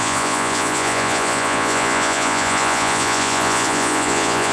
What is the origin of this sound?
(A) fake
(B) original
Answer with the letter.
A